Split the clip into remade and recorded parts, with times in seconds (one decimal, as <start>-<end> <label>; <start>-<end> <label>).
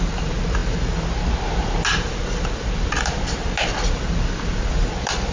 0.0-5.3 recorded